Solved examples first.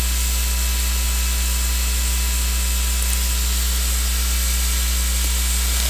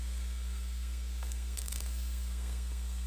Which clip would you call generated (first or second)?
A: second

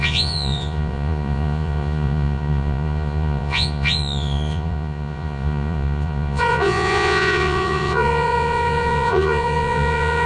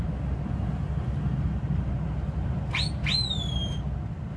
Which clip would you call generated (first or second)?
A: first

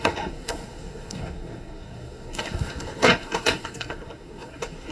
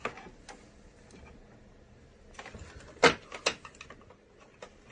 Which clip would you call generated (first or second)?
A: first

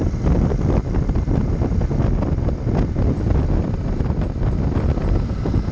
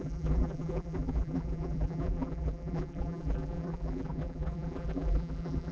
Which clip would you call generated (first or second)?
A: second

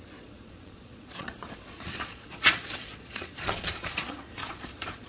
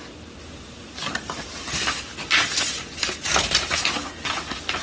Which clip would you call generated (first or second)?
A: first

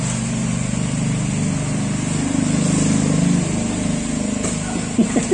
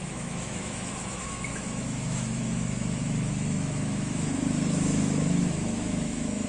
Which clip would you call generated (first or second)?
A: second